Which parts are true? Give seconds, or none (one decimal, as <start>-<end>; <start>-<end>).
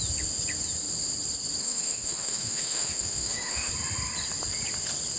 0.0-1.6; 3.7-5.2